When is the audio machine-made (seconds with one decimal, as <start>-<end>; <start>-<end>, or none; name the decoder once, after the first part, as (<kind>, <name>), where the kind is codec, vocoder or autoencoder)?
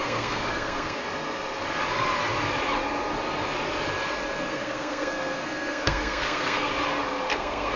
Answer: 0.0-1.0 (codec, SNAC); 4.5-6.7; 7.3-7.8